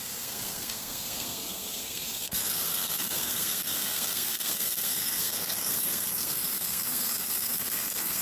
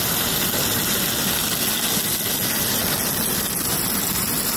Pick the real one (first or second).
second